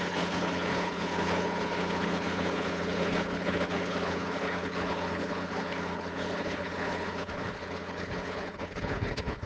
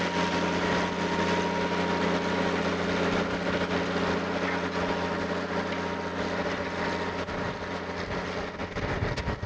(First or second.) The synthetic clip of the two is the first